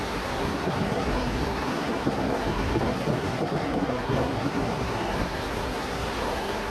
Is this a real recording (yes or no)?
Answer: no